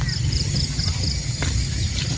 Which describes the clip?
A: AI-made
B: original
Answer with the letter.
B